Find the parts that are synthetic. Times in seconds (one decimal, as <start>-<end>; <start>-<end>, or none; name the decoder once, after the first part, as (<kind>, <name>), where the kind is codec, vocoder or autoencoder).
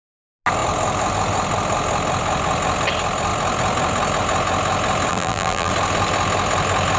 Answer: 5.1-5.7 (vocoder, BigVGAN v2)